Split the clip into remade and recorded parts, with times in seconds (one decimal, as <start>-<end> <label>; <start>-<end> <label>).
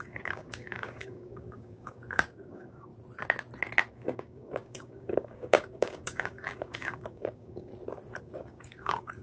0.0-2.9 remade; 2.9-3.9 recorded; 3.9-7.7 remade; 7.7-8.2 recorded; 8.2-9.2 remade